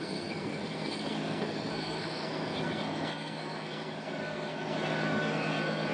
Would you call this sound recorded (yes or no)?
no